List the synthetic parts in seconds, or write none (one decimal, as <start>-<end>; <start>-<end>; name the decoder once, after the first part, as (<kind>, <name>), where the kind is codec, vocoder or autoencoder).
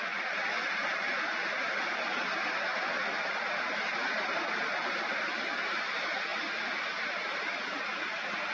none